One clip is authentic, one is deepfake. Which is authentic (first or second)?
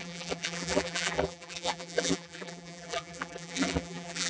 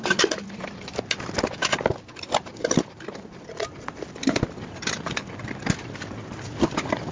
second